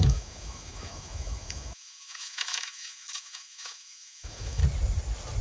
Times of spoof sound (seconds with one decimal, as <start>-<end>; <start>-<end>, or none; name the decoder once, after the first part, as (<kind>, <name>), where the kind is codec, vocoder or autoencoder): 0.0-4.6 (autoencoder, DAC-VAE)